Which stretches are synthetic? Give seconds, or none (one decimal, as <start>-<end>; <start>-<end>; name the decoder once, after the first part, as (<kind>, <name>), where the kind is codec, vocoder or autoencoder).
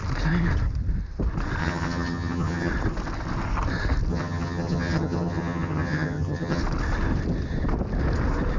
1.6-2.7 (vocoder, HiFi-GAN); 4.1-6.6